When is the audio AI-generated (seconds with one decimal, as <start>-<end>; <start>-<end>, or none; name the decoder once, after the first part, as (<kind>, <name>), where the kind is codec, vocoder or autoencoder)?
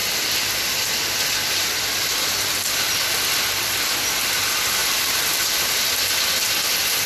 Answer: 4.8-5.6 (vocoder, BigVGAN v2)